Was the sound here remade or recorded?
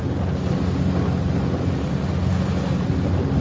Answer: recorded